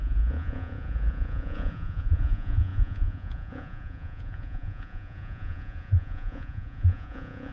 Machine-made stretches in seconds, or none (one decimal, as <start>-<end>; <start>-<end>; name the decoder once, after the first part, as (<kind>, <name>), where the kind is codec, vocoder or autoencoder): 0.0-7.5 (vocoder, Vocos)